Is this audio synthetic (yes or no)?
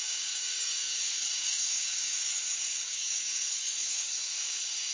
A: yes